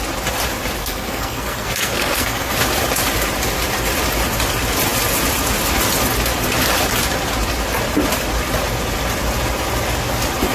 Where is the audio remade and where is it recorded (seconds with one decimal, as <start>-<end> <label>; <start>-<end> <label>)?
0.0-0.8 recorded; 0.8-2.5 remade; 2.5-10.5 recorded